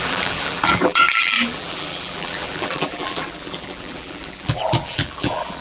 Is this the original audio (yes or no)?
no